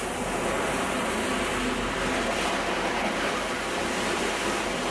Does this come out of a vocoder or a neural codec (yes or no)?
no